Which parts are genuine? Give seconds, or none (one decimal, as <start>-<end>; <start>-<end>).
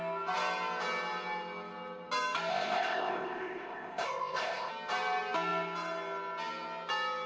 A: 0.0-2.5; 4.7-7.3